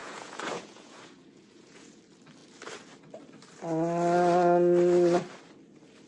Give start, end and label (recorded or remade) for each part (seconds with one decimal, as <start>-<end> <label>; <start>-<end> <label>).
0.0-2.0 remade; 2.0-6.1 recorded